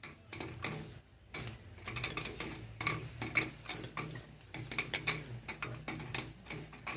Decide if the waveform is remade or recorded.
recorded